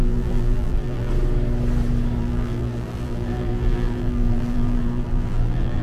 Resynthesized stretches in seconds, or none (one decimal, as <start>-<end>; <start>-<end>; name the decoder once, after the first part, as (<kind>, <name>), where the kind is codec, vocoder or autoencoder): 0.0-1.1 (vocoder, BigVGAN v2); 2.2-5.8